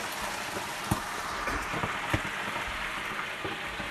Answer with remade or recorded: recorded